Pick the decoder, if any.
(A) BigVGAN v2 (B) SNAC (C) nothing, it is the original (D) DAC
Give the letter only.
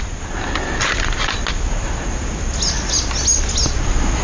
C